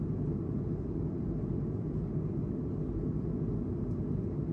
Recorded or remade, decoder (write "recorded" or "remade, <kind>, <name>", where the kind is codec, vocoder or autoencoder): recorded